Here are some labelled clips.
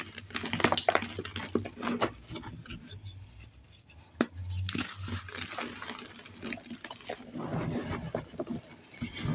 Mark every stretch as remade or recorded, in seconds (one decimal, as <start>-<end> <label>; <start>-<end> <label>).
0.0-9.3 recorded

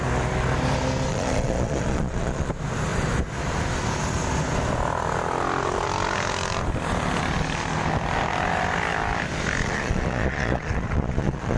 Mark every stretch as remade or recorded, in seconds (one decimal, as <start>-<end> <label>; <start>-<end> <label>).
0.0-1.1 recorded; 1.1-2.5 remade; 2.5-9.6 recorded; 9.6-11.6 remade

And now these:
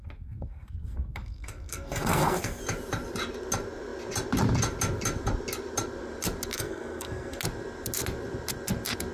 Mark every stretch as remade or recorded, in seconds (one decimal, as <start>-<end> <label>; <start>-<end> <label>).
0.0-2.6 remade; 2.6-6.5 recorded; 6.5-7.4 remade; 7.4-9.1 recorded